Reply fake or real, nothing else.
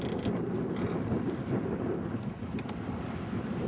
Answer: real